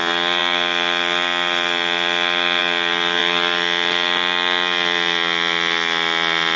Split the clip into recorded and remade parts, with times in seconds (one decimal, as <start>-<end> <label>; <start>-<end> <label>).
0.0-6.6 recorded